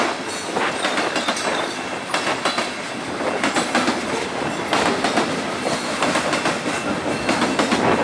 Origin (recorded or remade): recorded